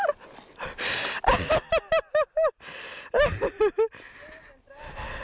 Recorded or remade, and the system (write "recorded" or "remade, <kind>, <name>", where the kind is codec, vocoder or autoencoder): recorded